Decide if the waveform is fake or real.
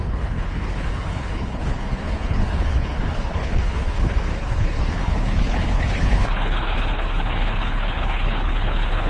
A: fake